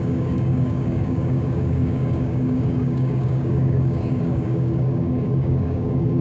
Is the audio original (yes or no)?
no